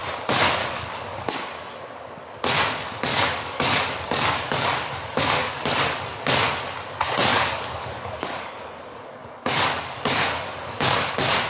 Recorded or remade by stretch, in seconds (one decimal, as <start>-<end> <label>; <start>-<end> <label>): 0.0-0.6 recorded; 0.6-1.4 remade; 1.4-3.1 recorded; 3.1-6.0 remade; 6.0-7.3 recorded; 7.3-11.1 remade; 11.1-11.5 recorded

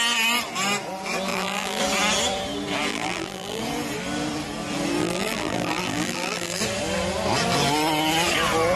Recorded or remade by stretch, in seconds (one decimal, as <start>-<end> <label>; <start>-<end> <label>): 0.0-1.3 recorded; 1.3-1.8 remade; 1.8-2.9 recorded; 2.9-3.6 remade; 3.6-5.0 recorded; 5.0-6.6 remade; 6.6-8.8 recorded

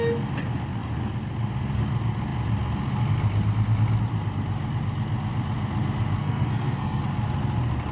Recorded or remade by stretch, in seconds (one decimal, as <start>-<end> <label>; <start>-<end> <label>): 0.0-6.2 recorded; 6.2-7.0 remade; 7.0-7.9 recorded

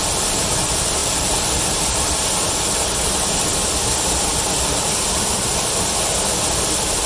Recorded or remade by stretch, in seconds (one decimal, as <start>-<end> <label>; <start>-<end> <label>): 0.0-1.0 recorded; 1.0-1.6 remade; 1.6-7.1 recorded

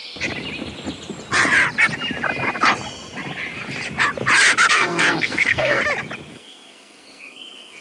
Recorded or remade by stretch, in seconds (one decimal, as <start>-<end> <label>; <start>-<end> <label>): 0.0-4.7 recorded; 4.7-5.8 remade; 5.8-6.3 recorded; 6.3-7.8 remade

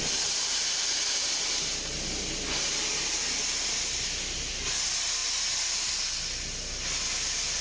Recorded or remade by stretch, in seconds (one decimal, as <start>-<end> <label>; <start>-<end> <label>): 0.0-7.6 recorded